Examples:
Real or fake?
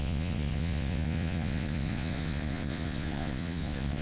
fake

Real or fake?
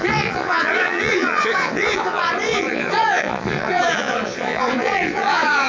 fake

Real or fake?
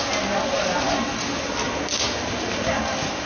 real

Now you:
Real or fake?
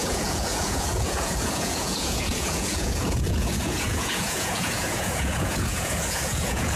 fake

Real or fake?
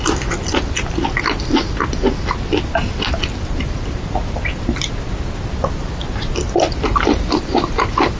real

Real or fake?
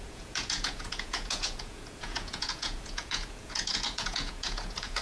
fake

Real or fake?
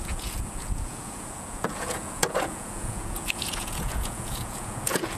fake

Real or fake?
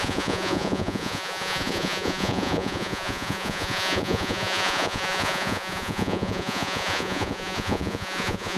fake